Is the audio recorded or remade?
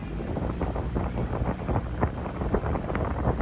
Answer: recorded